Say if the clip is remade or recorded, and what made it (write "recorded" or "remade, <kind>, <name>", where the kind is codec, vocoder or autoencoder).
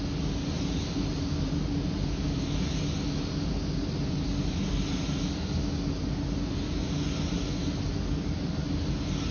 recorded